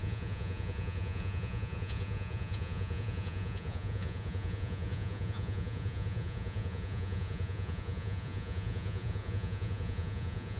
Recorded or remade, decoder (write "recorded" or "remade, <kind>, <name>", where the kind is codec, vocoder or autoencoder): remade, vocoder, Vocos